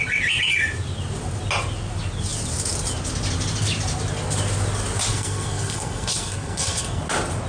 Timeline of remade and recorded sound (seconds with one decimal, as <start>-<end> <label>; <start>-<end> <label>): 0.0-5.1 recorded; 5.1-7.0 remade; 7.0-7.5 recorded